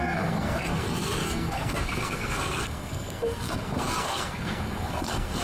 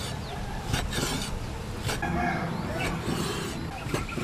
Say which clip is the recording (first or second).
second